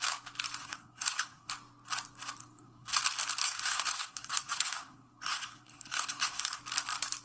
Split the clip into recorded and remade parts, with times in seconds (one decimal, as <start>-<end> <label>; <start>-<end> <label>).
0.0-0.6 recorded; 0.6-1.5 remade; 1.5-2.4 recorded; 2.4-3.0 remade; 3.0-3.4 recorded; 3.4-6.6 remade; 6.6-7.2 recorded

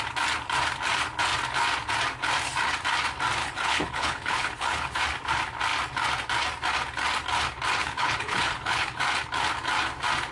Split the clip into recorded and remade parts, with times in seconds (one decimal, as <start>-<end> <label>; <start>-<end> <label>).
0.0-3.4 recorded; 3.4-5.0 remade; 5.0-7.8 recorded; 7.8-9.0 remade; 9.0-10.3 recorded

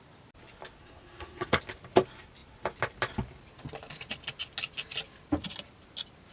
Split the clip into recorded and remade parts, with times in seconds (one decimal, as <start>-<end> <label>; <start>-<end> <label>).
0.0-0.8 recorded; 0.8-1.6 remade; 1.6-6.3 recorded